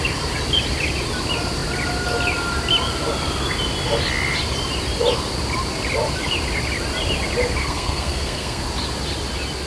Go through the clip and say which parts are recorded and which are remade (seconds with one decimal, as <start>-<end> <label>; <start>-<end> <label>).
0.0-7.6 recorded; 7.6-8.6 remade; 8.6-9.7 recorded

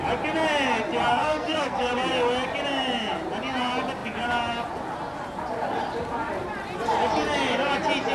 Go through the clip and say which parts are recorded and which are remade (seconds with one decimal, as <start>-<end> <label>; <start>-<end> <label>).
0.0-1.1 recorded; 1.1-1.9 remade; 1.9-8.1 recorded

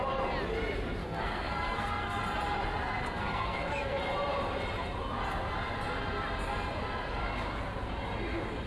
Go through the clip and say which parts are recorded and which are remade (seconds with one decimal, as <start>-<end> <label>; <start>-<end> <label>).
0.0-1.0 recorded; 1.0-2.2 remade; 2.2-3.0 recorded; 3.0-4.0 remade; 4.0-8.7 recorded